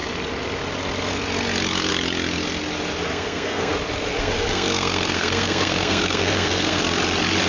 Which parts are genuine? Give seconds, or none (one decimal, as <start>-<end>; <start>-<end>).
0.0-3.1; 3.7-4.2; 6.8-7.5